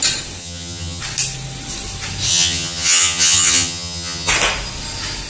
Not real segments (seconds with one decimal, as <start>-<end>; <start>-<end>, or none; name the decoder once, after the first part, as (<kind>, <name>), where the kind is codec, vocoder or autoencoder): 0.4-1.0 (vocoder, HiFi-GAN); 2.3-4.3